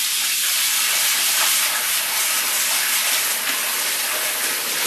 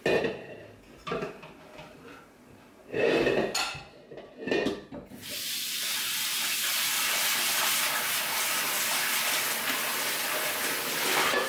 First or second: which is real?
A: second